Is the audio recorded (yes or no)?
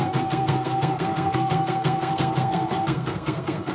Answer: no